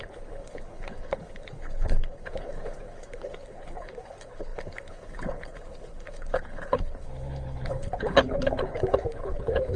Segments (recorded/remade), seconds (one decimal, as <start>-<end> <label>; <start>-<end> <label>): 0.0-9.8 remade